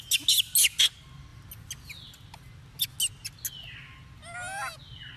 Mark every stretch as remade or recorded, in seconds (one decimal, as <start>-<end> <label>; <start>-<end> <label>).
0.0-5.2 recorded